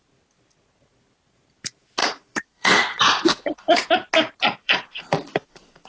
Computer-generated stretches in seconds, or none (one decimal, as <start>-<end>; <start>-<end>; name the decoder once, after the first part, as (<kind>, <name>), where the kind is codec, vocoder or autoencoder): 2.0-3.8 (vocoder, Vocos); 4.6-5.9

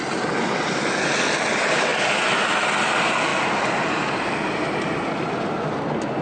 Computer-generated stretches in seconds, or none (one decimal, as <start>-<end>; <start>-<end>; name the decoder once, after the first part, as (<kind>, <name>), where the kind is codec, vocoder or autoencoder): none